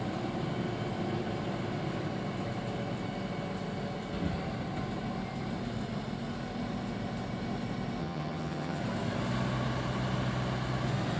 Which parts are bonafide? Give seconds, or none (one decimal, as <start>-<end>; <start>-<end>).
0.0-8.0; 8.8-11.2